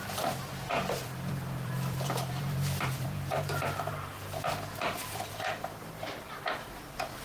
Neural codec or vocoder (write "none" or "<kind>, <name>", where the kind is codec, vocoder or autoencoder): vocoder, BigVGAN v2